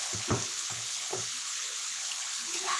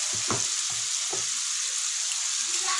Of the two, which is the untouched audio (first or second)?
second